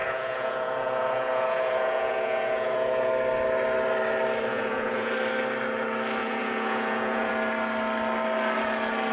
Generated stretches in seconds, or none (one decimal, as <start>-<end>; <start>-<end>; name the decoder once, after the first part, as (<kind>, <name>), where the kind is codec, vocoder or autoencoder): 0.0-3.1 (vocoder, Vocos); 4.5-5.1; 6.2-7.3